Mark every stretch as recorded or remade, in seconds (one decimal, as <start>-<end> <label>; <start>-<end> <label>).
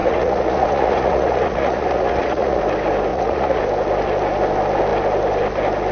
0.0-2.6 remade; 2.6-3.1 recorded; 3.1-3.6 remade; 3.6-5.9 recorded